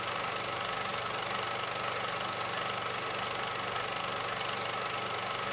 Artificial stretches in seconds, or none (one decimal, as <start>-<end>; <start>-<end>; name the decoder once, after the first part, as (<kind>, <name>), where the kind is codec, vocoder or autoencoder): none